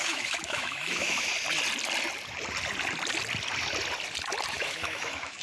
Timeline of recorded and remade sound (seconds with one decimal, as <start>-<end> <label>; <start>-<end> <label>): 0.0-1.3 remade; 1.3-4.5 recorded; 4.5-5.4 remade

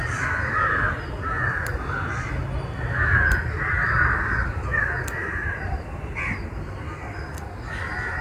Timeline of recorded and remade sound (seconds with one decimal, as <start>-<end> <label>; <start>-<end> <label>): 0.0-5.4 recorded; 5.4-6.2 remade; 6.2-8.2 recorded

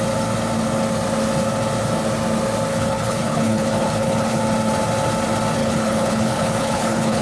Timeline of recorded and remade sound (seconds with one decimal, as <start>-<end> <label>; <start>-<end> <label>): 0.0-2.7 recorded; 2.7-4.4 remade; 4.4-5.6 recorded; 5.6-7.2 remade